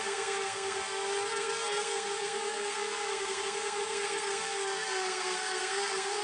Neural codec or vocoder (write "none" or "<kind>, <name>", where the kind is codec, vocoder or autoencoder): codec, SNAC